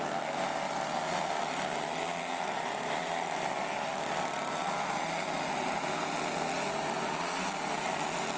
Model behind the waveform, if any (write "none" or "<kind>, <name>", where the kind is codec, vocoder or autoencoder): none